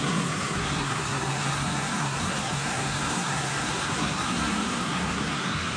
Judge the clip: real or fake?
fake